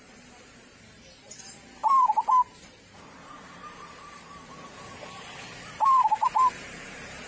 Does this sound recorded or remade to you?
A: remade